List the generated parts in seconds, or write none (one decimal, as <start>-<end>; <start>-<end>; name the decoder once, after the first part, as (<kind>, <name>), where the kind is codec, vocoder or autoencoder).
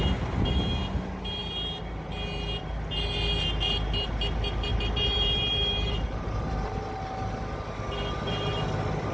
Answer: 4.7-6.9 (vocoder, BigVGAN v2)